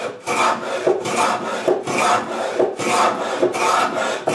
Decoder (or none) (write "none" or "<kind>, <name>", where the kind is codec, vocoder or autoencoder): none